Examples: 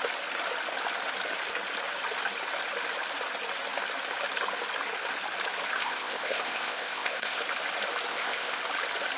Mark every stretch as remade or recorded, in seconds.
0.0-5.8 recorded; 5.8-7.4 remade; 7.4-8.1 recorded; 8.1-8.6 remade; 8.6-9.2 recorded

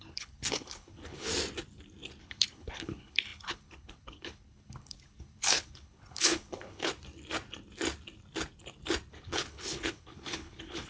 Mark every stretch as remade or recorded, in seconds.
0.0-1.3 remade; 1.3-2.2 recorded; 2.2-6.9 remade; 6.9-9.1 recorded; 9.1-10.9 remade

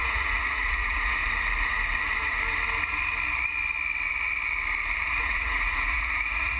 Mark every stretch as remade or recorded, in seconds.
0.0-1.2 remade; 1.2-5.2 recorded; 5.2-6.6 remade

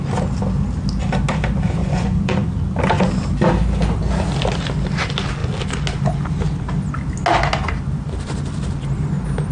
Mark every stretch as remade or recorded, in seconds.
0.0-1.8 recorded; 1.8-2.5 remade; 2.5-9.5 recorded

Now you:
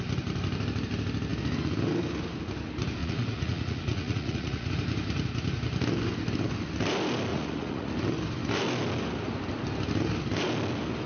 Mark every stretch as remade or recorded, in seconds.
0.0-3.0 recorded; 3.0-4.7 remade; 4.7-7.3 recorded; 7.3-7.9 remade; 7.9-11.1 recorded

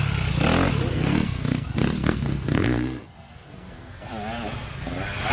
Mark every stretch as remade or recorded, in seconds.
0.0-0.9 recorded; 0.9-4.1 remade; 4.1-5.3 recorded

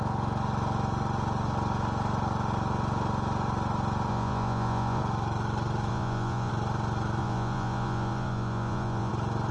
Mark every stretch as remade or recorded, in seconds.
0.0-4.1 recorded; 4.1-5.0 remade; 5.0-5.9 recorded; 5.9-6.5 remade; 6.5-7.2 recorded; 7.2-9.1 remade; 9.1-9.5 recorded